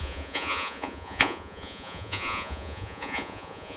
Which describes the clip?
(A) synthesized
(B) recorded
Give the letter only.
A